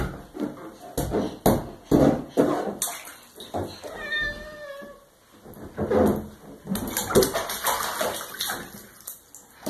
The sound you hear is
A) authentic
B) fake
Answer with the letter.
A